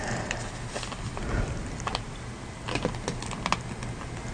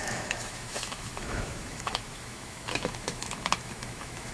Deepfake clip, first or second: second